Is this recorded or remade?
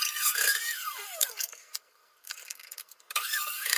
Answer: remade